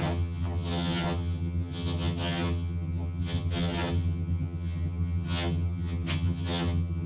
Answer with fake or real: fake